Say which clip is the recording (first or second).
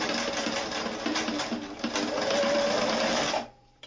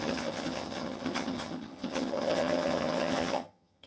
first